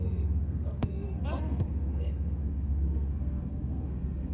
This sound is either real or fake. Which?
fake